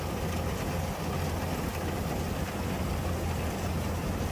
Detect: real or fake real